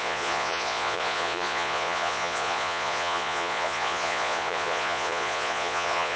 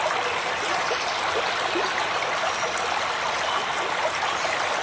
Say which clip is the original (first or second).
second